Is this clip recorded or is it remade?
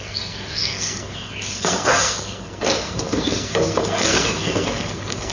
remade